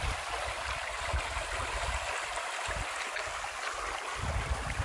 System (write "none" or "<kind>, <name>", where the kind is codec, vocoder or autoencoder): none